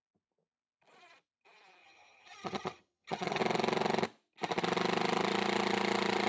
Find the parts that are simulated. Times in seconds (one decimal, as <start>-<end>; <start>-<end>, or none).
1.8-3.4